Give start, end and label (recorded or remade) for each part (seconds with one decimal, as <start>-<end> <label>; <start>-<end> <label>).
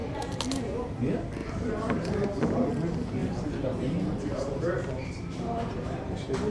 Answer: 0.0-0.7 remade; 0.7-1.4 recorded; 1.4-2.7 remade; 2.7-3.2 recorded; 3.2-6.5 remade